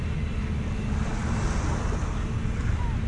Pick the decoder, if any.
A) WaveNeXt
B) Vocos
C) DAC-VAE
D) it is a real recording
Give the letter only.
D